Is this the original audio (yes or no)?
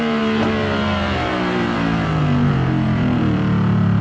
no